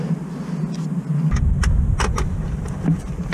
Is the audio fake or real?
real